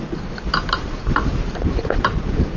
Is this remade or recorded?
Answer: recorded